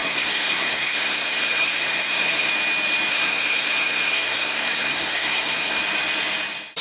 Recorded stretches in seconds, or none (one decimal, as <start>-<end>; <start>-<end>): 2.5-3.1; 5.8-6.8

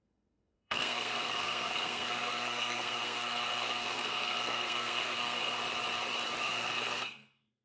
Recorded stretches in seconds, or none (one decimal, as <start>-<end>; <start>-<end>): 5.6-6.4

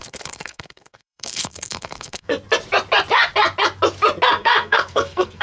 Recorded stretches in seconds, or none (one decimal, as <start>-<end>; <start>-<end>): 2.3-4.3